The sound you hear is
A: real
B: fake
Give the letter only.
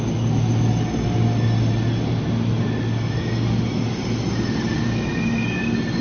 A